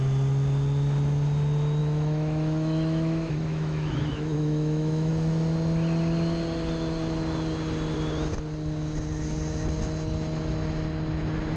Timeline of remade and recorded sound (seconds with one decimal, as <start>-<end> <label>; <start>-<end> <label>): 0.0-1.8 recorded; 1.8-5.1 remade; 5.1-11.6 recorded